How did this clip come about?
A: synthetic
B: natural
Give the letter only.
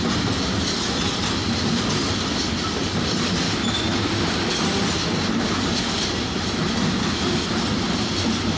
B